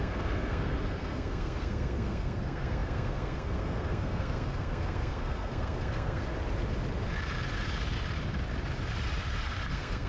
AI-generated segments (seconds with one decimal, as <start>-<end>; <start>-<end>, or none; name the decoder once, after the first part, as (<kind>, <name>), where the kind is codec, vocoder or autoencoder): 0.0-6.3 (codec, SNAC); 9.7-10.1